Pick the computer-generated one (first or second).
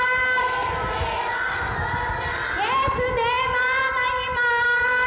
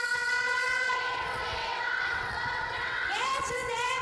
second